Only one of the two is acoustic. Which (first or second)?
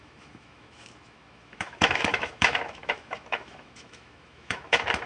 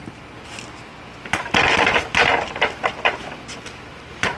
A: second